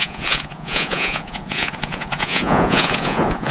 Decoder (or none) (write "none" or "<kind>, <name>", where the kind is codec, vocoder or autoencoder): vocoder, Vocos